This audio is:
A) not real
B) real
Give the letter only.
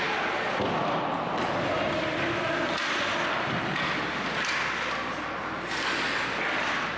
B